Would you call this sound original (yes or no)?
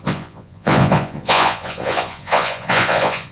no